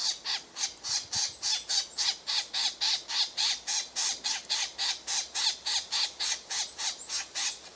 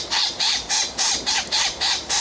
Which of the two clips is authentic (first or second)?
first